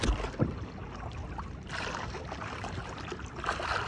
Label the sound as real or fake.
real